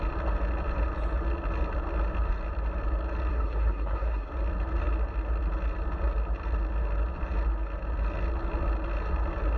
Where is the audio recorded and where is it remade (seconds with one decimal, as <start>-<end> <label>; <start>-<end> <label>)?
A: 0.0-3.3 recorded; 3.3-4.3 remade; 4.3-9.6 recorded